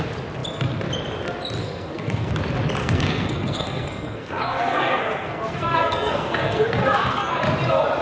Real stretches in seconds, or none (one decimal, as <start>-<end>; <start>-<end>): 0.0-1.6; 2.3-2.8; 7.4-8.0